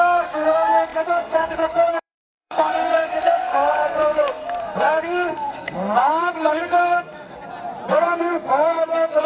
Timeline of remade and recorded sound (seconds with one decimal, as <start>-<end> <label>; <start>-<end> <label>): 0.0-7.3 remade; 7.3-7.9 recorded; 7.9-9.3 remade